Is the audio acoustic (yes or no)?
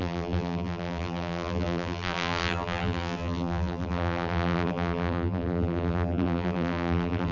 no